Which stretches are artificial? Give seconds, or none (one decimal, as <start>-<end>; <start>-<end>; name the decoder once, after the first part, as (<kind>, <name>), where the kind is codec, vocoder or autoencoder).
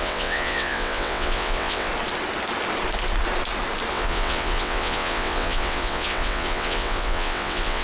0.0-1.9 (vocoder, WaveNeXt); 3.9-7.8